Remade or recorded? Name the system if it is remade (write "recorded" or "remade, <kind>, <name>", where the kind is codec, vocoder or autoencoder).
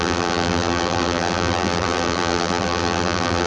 remade, vocoder, BigVGAN v2